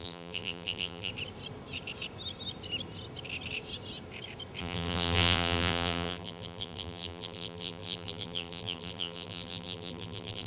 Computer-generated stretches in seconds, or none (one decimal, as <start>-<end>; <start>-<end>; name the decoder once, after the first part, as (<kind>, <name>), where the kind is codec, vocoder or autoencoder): 0.0-1.1 (vocoder, BigVGAN v2); 4.6-10.5